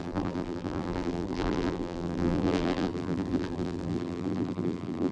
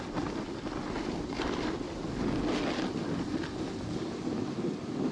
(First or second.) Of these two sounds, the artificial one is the first